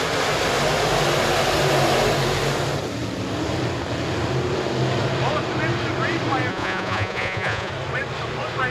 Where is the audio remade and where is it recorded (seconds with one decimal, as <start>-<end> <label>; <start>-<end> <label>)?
0.0-6.5 recorded; 6.5-7.7 remade; 7.7-8.7 recorded